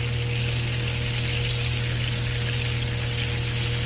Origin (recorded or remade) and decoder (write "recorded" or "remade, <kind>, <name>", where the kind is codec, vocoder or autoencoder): recorded